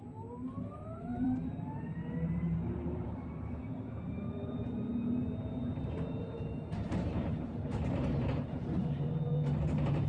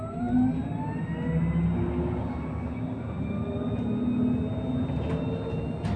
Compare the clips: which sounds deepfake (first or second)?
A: first